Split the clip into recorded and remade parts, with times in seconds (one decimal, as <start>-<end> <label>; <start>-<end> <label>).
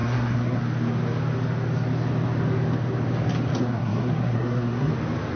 0.0-0.6 remade; 0.6-3.5 recorded; 3.5-4.9 remade; 4.9-5.4 recorded